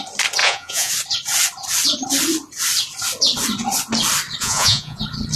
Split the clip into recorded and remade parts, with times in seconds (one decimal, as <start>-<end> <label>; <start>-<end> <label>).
0.0-0.4 recorded; 0.4-0.9 remade; 0.9-4.4 recorded; 4.4-5.0 remade; 5.0-5.4 recorded